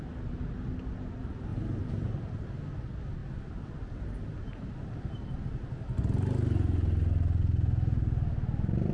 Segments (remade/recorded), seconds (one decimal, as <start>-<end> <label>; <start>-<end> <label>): 0.0-1.5 recorded; 1.5-2.3 remade; 2.3-3.2 recorded; 3.2-5.4 remade; 5.4-8.9 recorded